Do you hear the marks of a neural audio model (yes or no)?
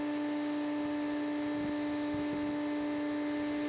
no